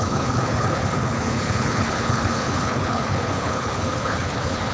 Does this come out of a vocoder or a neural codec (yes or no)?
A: yes